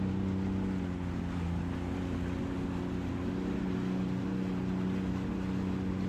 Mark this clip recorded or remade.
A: recorded